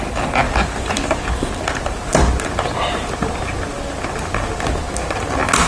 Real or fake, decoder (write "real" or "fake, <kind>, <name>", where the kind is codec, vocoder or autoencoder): real